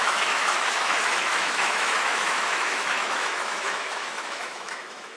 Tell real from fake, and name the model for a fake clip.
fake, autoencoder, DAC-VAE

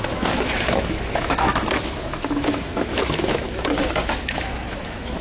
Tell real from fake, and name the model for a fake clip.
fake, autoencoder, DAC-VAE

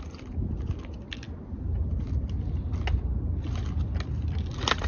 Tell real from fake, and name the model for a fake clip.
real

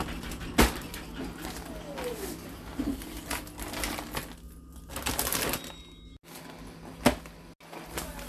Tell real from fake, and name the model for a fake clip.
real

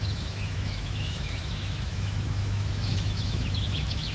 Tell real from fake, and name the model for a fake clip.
fake, autoencoder, DAC-VAE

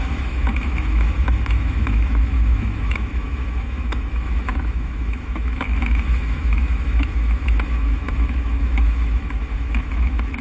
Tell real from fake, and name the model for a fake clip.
fake, autoencoder, DAC-VAE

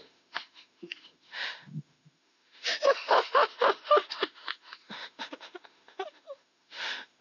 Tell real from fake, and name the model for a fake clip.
fake, autoencoder, DAC-VAE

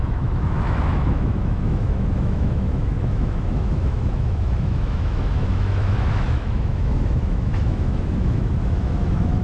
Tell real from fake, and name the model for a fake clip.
fake, autoencoder, DAC-VAE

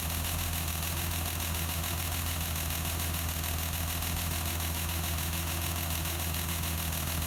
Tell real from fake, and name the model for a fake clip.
fake, autoencoder, DAC-VAE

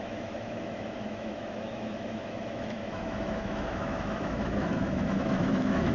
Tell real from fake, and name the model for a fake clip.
fake, autoencoder, DAC-VAE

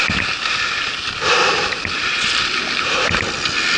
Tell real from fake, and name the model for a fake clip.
real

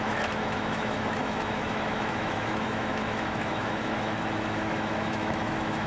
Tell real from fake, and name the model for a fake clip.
fake, autoencoder, DAC-VAE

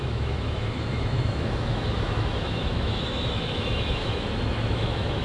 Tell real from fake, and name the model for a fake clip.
fake, autoencoder, DAC-VAE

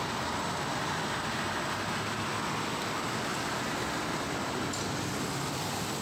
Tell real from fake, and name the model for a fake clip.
real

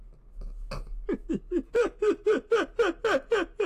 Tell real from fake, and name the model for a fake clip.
real